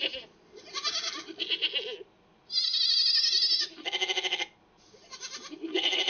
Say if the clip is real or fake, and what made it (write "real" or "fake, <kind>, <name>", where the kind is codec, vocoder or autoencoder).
real